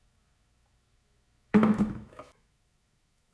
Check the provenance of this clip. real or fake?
fake